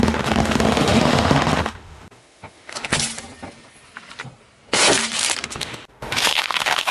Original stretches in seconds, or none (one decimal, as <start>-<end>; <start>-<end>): 2.9-5.4